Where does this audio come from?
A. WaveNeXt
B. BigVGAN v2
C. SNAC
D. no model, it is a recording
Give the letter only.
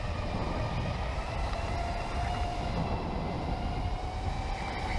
D